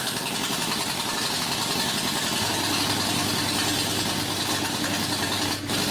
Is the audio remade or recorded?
recorded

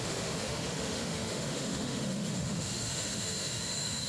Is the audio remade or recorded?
remade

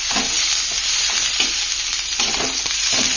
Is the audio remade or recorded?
recorded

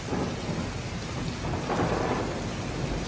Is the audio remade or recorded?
recorded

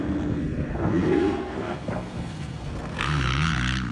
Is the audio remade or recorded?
remade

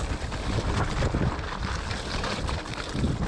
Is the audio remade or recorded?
recorded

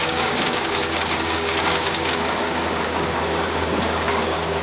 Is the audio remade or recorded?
remade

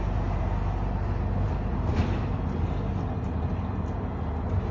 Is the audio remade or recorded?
recorded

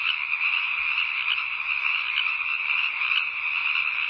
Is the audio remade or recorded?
recorded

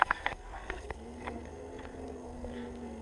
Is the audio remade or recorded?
remade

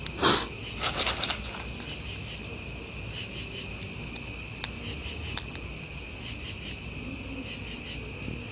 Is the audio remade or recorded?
recorded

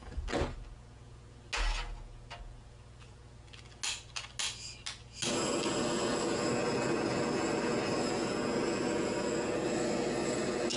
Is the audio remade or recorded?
recorded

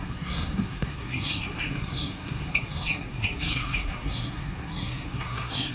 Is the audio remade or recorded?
remade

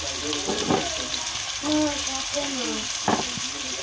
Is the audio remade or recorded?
recorded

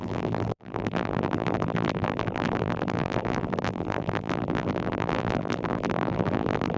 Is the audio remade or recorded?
remade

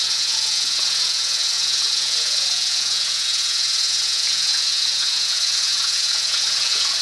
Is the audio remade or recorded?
remade